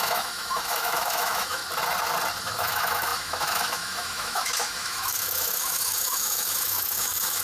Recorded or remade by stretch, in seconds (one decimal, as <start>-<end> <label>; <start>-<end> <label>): 0.0-1.6 remade; 1.6-2.4 recorded; 2.4-7.4 remade